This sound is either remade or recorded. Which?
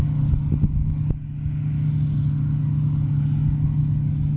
recorded